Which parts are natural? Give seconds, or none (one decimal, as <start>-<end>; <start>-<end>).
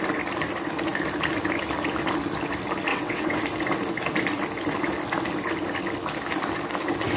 0.0-2.9; 3.4-7.2